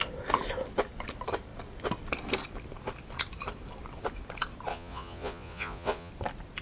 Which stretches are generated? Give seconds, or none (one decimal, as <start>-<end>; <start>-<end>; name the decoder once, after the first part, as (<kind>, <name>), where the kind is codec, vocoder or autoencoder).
4.7-6.1 (vocoder, Vocos)